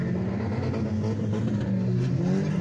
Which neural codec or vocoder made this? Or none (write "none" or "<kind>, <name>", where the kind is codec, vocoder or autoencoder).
none